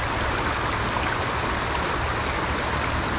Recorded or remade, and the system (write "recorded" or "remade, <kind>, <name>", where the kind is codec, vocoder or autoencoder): recorded